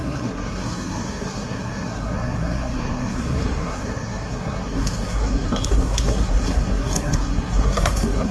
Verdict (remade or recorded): remade